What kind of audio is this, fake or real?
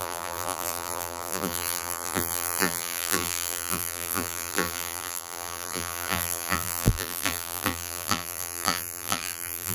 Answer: fake